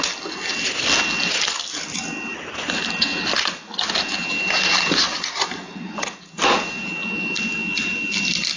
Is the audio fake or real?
real